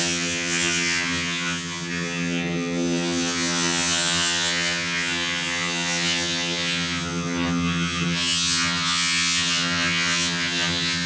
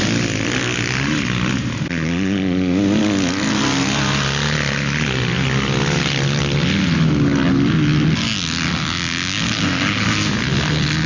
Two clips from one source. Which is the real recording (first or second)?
second